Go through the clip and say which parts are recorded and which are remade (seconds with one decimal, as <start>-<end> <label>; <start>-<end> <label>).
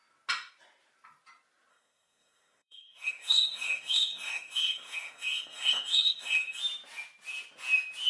0.0-1.7 recorded; 1.7-6.6 remade; 6.6-8.1 recorded